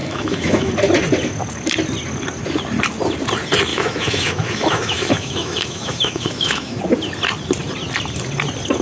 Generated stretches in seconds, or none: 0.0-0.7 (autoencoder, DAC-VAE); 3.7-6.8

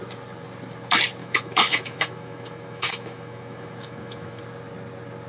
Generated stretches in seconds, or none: 1.2-4.4 (autoencoder, DAC-VAE)

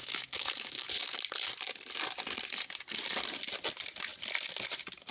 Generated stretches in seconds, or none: 0.0-0.9 (autoencoder, DAC-VAE)

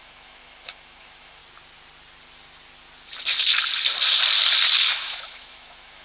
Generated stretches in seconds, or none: 0.0-1.4 (autoencoder, DAC-VAE); 4.9-6.0